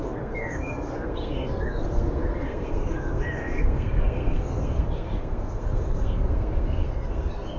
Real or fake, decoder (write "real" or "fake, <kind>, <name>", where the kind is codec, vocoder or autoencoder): fake, codec, SNAC